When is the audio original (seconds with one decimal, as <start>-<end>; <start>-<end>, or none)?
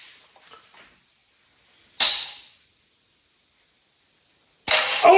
0.0-5.2